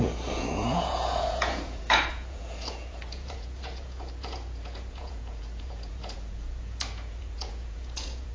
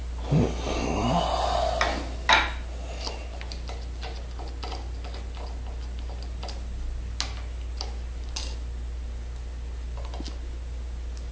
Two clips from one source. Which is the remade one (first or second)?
first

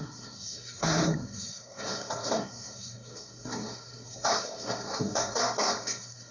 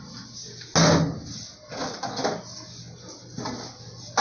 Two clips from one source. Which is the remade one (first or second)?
first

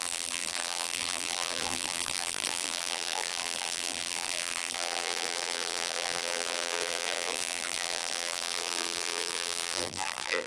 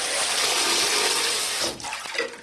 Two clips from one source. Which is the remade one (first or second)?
first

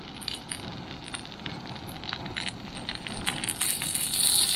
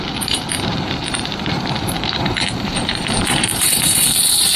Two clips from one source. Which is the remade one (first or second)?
second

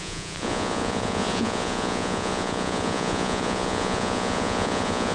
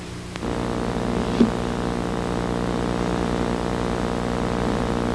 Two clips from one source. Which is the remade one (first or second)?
first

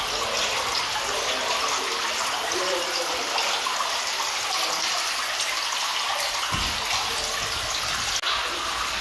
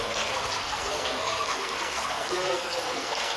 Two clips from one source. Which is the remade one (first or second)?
second